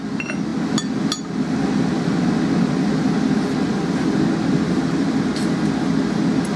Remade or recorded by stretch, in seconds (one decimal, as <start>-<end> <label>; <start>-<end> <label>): 0.0-6.6 recorded